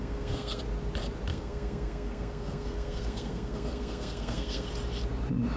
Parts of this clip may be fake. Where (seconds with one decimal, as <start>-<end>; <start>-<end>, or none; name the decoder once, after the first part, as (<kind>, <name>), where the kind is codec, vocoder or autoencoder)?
0.0-0.6 (codec, SNAC); 1.3-4.7